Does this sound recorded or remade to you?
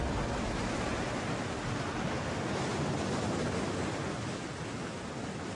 recorded